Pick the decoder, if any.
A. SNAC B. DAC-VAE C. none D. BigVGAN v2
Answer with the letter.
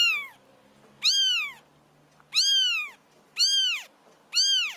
C